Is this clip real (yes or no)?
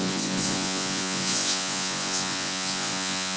no